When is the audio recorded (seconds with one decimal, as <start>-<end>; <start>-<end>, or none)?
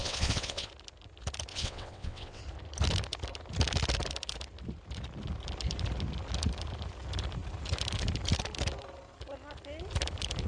0.7-1.5; 2.4-10.5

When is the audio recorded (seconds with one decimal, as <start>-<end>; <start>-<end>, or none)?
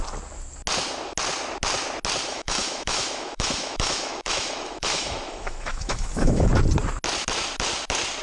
0.0-2.3; 6.5-8.2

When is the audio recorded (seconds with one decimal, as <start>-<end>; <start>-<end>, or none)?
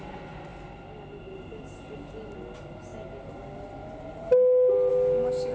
0.0-5.5